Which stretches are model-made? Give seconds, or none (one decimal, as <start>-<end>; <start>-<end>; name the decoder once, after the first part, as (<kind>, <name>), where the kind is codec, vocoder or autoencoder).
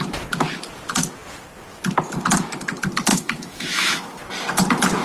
3.1-4.2 (autoencoder, DAC-VAE)